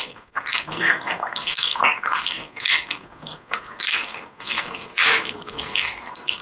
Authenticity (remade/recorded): remade